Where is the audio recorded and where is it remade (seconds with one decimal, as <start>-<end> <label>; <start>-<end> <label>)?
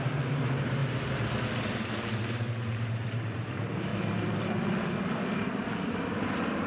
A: 0.0-0.8 remade; 0.8-1.6 recorded; 1.6-3.9 remade; 3.9-5.0 recorded; 5.0-6.7 remade